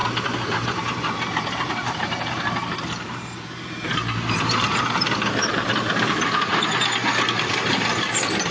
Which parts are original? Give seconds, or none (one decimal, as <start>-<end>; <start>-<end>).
6.5-7.4

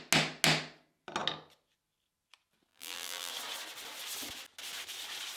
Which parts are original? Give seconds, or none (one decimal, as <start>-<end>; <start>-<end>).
0.0-2.7; 3.3-5.4

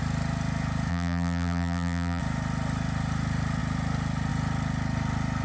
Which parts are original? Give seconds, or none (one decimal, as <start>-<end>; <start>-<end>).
0.0-0.9; 2.2-5.4

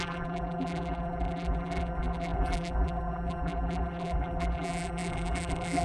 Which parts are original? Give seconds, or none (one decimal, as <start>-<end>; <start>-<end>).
none

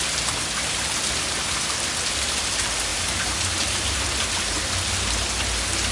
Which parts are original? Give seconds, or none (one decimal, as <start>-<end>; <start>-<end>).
0.0-2.9; 4.0-5.9

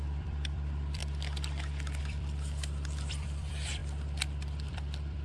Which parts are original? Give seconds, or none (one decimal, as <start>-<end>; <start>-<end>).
1.0-2.0